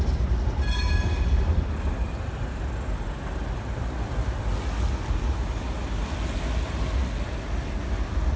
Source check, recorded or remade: recorded